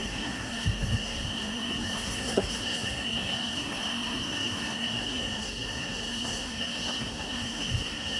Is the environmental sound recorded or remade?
remade